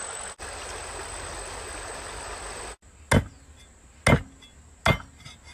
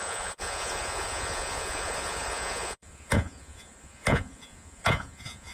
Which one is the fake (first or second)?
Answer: second